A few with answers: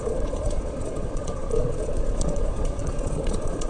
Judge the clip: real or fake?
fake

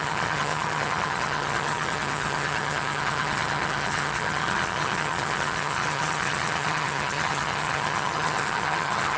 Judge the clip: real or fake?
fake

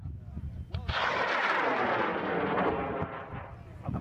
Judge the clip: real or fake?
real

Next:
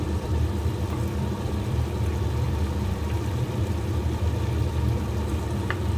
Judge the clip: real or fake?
fake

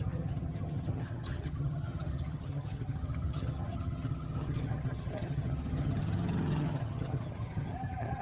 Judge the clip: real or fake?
fake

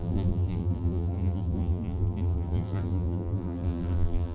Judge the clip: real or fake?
fake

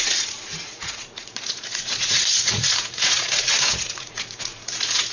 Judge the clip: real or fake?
fake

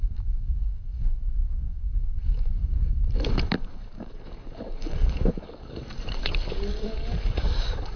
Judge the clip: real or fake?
fake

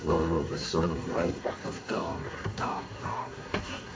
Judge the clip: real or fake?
fake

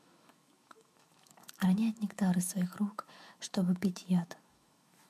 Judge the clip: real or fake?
fake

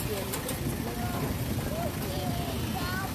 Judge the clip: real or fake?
fake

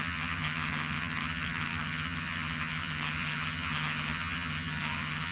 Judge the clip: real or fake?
fake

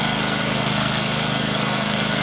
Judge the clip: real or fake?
fake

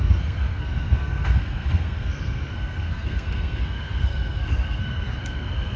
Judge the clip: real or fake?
fake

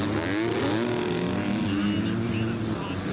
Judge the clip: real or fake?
real